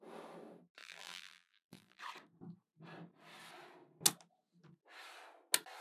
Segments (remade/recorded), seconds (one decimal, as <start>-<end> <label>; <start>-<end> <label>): 0.0-0.8 recorded; 0.8-2.0 remade; 2.0-5.8 recorded